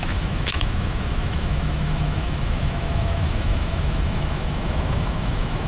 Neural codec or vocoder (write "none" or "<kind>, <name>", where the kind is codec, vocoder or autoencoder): autoencoder, DAC-VAE